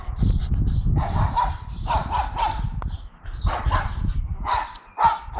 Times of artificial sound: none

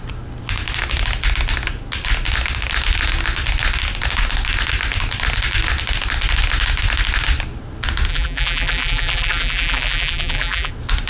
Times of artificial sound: 8.1-10.7 (vocoder, BigVGAN v2)

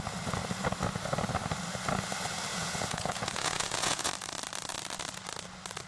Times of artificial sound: 2.5-4.1 (vocoder, Vocos)

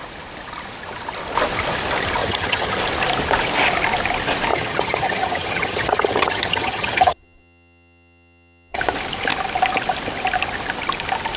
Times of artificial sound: 2.2-2.8 (vocoder, HiFi-GAN); 4.5-8.8